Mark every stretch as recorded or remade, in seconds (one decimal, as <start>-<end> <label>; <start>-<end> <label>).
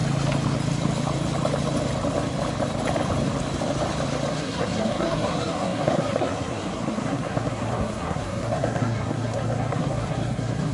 0.0-4.3 recorded; 4.3-10.7 remade